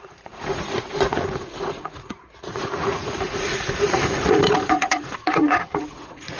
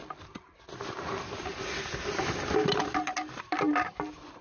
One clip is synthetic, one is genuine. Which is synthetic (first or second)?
first